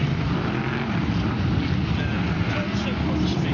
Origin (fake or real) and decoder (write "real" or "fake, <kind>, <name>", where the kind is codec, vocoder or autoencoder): real